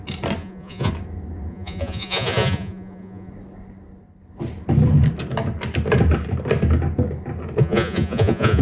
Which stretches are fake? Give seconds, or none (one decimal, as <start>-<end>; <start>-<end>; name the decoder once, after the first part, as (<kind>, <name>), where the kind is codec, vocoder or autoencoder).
0.4-0.9 (vocoder, Vocos); 1.5-3.3; 7.6-8.6